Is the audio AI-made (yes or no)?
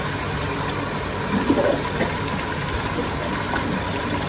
no